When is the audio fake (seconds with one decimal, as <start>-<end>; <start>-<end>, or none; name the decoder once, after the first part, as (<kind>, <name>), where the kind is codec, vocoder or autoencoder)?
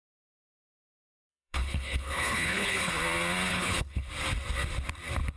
1.3-2.9 (codec, HILCodec); 3.5-4.1